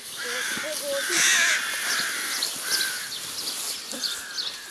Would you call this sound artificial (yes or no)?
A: no